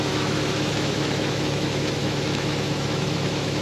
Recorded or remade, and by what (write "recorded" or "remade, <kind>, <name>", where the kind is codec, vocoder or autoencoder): remade, autoencoder, DAC-VAE